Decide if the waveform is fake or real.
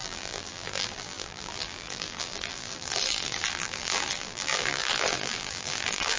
fake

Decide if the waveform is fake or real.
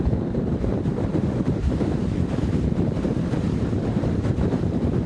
fake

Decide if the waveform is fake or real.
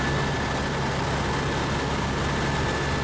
real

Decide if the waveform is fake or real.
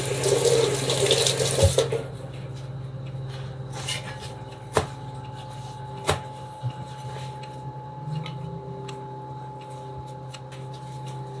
real